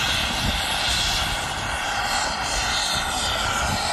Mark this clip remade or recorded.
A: recorded